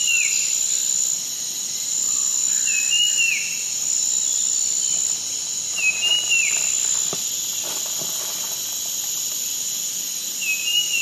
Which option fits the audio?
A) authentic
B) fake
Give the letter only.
A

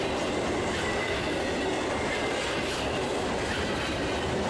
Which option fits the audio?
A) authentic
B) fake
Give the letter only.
A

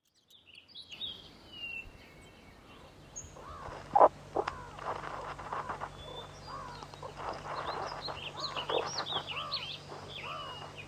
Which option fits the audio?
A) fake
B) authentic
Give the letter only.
B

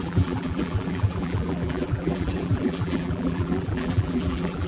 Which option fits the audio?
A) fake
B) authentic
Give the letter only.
A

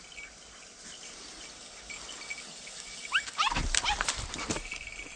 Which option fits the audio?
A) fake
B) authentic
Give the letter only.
B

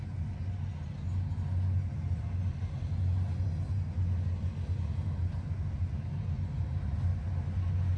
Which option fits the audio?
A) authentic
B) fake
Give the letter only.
A